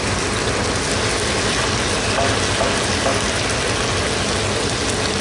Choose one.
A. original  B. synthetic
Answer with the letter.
A